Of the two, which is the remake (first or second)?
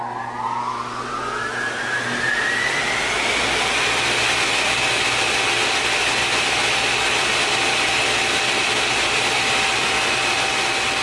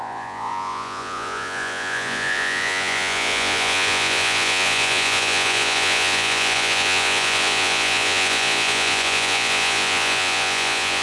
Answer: second